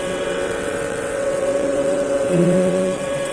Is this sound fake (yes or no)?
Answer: yes